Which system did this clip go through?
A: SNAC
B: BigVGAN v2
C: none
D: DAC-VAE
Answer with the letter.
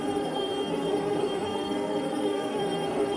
A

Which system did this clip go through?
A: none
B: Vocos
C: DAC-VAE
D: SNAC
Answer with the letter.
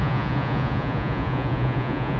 B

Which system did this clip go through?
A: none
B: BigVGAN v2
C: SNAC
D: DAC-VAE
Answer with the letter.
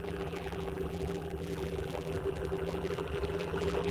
B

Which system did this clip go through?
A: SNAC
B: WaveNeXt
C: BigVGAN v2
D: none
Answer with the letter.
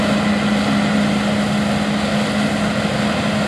D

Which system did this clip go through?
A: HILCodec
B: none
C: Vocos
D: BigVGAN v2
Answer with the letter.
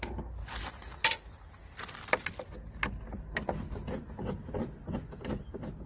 B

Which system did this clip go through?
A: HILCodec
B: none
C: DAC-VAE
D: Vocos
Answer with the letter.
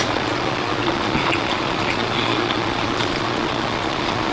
D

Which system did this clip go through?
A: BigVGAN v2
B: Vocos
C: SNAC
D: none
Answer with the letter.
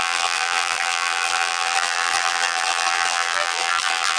A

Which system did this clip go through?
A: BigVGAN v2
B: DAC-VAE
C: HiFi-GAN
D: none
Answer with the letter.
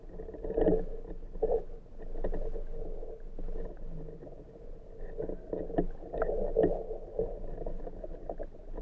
D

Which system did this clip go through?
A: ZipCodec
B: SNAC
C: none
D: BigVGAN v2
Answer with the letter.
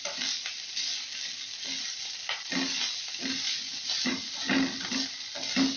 C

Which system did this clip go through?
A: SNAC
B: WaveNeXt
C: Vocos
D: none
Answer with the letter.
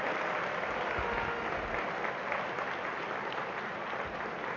D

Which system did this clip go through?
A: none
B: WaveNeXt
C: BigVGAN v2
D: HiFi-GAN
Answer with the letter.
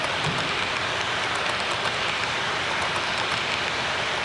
A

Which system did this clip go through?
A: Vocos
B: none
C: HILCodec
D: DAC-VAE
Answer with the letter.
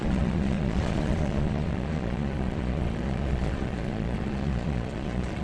A